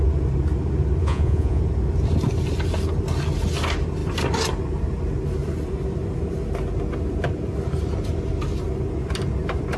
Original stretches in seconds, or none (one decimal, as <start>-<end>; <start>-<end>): 0.0-1.0; 1.6-9.8